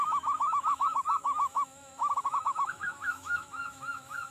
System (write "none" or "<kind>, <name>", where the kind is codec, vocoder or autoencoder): autoencoder, DAC-VAE